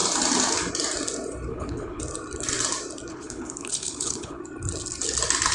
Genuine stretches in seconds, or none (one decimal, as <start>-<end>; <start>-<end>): 0.0-1.5; 2.0-3.1; 4.4-5.5